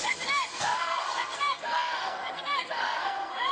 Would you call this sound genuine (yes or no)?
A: no